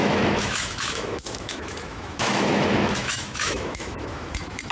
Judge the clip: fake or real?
fake